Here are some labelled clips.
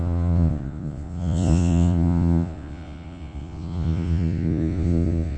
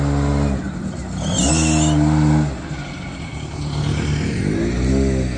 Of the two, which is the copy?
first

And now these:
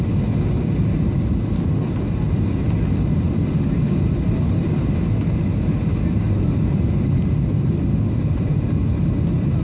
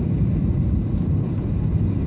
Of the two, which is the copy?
second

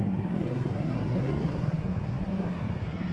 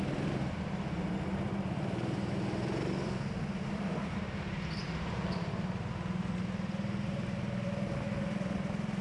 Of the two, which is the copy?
first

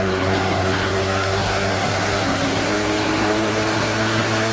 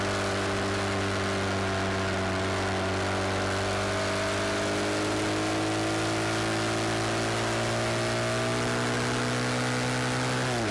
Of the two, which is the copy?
first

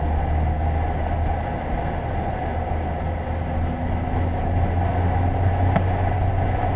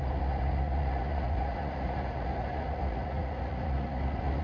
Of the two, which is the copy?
second